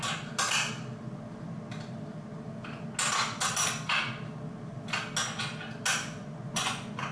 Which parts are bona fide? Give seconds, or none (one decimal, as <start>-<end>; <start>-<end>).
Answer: 0.0-6.2